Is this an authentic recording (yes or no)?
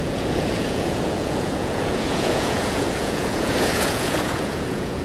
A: no